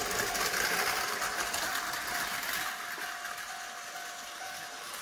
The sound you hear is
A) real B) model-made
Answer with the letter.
A